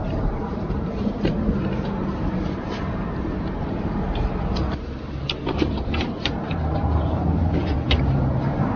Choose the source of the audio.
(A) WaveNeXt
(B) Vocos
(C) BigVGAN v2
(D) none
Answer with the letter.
C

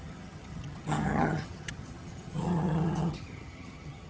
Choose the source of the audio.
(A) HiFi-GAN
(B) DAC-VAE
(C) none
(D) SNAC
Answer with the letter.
A